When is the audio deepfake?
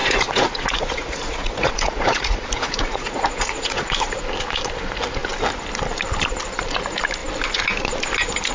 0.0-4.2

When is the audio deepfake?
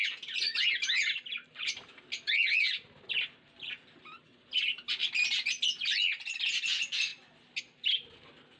none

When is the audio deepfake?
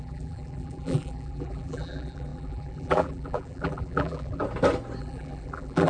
0.0-4.4; 5.0-5.9